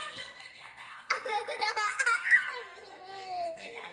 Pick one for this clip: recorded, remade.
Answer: remade